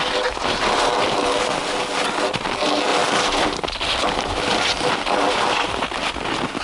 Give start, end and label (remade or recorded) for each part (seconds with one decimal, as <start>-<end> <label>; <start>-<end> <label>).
0.0-6.6 recorded